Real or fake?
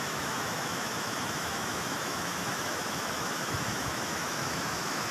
fake